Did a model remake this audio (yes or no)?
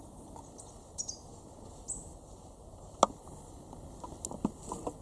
no